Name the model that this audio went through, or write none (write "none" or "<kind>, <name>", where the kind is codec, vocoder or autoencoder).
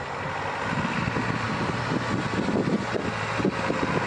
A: none